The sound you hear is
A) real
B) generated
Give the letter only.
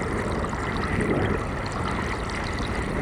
A